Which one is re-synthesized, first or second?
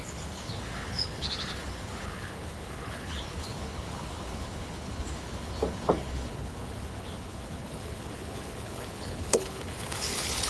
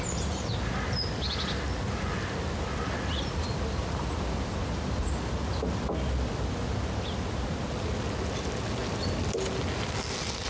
first